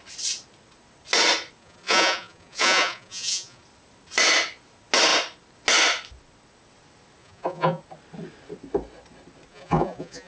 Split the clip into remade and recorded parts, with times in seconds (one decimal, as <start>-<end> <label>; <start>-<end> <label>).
0.0-1.6 recorded; 1.6-3.6 remade; 3.6-7.2 recorded; 7.2-7.8 remade; 7.8-9.5 recorded; 9.5-10.3 remade